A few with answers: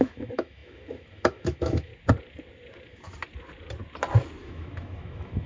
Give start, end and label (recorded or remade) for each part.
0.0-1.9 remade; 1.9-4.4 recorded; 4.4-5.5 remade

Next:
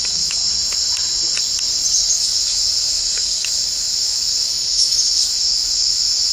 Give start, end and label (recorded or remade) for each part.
0.0-0.4 remade; 0.4-2.1 recorded; 2.1-6.3 remade

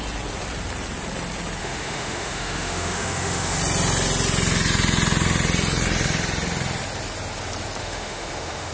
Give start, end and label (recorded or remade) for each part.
0.0-1.6 recorded; 1.6-3.6 remade; 3.6-7.8 recorded; 7.8-8.7 remade

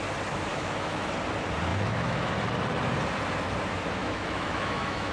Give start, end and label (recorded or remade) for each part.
0.0-0.5 recorded; 0.5-1.1 remade; 1.1-1.7 recorded; 1.7-2.3 remade; 2.3-4.0 recorded; 4.0-5.1 remade